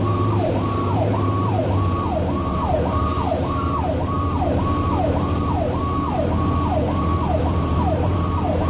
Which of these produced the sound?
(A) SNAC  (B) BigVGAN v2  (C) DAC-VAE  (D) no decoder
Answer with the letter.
B